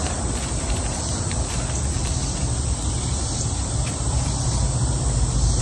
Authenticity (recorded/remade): recorded